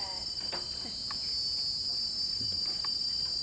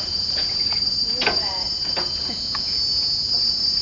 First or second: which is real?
first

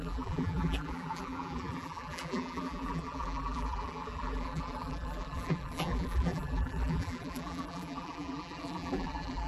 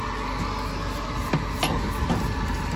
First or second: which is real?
second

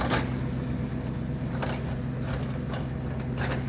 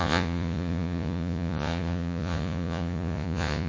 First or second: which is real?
first